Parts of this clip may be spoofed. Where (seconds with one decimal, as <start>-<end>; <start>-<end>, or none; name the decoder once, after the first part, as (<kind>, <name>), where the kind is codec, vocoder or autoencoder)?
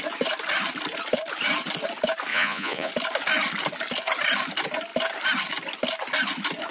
2.3-2.9 (vocoder, Vocos)